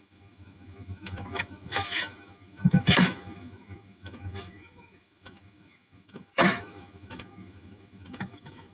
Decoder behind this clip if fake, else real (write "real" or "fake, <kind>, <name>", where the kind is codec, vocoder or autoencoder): fake, autoencoder, DAC-VAE